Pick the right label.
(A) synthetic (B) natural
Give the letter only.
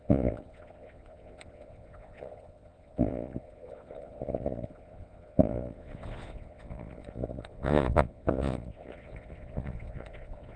A